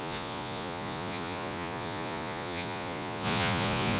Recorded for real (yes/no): no